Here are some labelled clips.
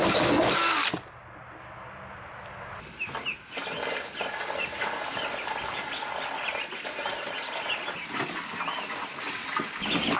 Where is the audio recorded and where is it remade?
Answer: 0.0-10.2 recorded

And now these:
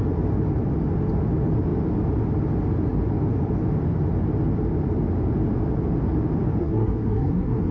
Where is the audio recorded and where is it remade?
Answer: 0.0-6.6 recorded; 6.6-7.7 remade

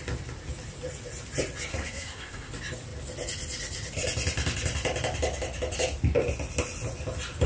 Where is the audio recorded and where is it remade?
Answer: 0.0-1.7 recorded; 1.7-2.5 remade; 2.5-7.5 recorded

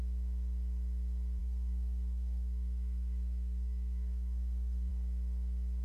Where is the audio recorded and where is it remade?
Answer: 0.0-1.4 recorded; 1.4-4.9 remade; 4.9-5.8 recorded